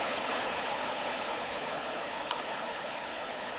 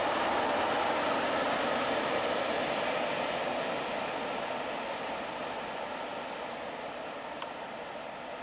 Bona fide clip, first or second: second